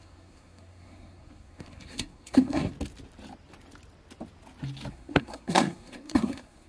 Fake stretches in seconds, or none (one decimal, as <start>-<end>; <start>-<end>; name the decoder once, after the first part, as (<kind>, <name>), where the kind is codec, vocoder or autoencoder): 0.0-2.7 (codec, SNAC); 4.9-6.7